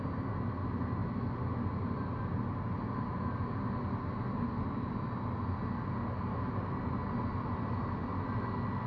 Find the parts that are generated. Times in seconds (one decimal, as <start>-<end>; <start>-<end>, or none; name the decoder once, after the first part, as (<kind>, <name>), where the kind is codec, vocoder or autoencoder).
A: none